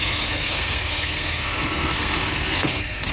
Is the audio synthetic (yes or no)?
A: yes